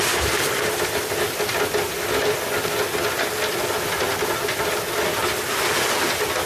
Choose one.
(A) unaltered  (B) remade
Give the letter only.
A